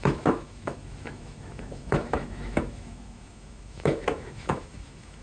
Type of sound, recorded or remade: remade